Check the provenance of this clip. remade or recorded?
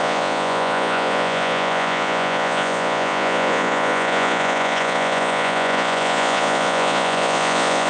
remade